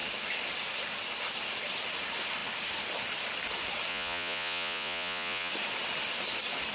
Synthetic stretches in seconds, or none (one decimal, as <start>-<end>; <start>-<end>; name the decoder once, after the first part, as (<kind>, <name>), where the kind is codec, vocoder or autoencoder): 3.9-5.5 (vocoder, Vocos)